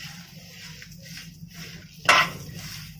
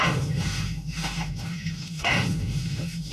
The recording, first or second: first